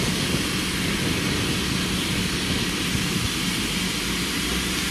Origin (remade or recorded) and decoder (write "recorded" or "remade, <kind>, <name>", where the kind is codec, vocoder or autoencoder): recorded